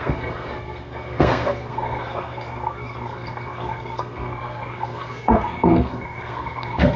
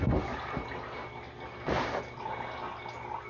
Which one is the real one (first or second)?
second